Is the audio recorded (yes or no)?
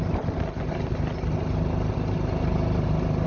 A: yes